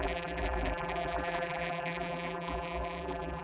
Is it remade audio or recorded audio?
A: remade